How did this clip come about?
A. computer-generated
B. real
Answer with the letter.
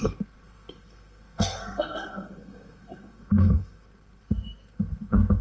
A